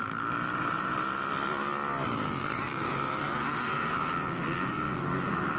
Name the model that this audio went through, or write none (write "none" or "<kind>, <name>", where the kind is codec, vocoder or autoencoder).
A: none